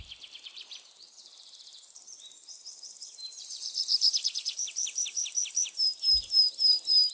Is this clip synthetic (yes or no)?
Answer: yes